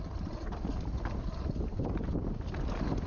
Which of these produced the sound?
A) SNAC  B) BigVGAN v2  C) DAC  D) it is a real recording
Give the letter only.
D